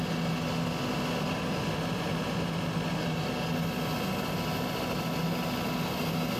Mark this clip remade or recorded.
recorded